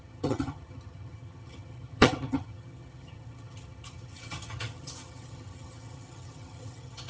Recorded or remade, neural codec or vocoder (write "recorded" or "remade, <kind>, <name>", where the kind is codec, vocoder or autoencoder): remade, vocoder, HiFi-GAN